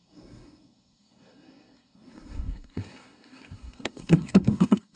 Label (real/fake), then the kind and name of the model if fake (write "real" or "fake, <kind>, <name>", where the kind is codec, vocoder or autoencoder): fake, codec, SNAC